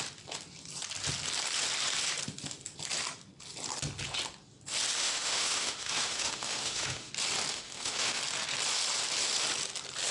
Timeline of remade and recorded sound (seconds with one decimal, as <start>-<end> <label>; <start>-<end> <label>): 0.0-5.0 recorded; 5.0-7.1 remade; 7.1-7.5 recorded; 7.5-8.2 remade; 8.2-10.1 recorded